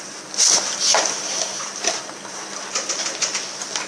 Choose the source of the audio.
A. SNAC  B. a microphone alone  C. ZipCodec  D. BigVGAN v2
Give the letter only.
B